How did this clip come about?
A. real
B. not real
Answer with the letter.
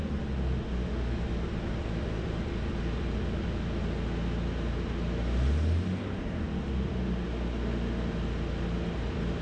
A